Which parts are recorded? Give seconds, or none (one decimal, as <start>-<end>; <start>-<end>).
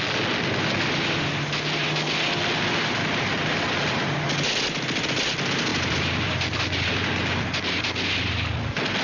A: 0.0-9.0